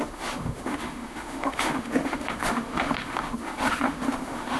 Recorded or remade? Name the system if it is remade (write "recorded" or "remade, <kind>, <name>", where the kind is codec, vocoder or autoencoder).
remade, autoencoder, DAC-VAE